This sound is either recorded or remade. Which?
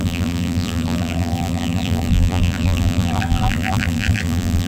remade